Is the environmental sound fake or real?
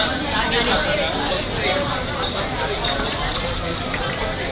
real